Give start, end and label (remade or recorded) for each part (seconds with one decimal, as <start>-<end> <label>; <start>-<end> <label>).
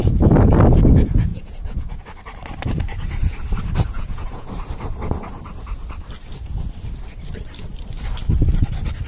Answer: 0.0-1.3 recorded; 1.3-2.0 remade; 2.0-3.9 recorded; 3.9-4.5 remade; 4.5-9.1 recorded